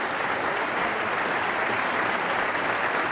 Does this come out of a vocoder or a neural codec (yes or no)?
no